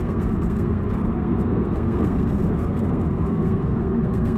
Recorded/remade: remade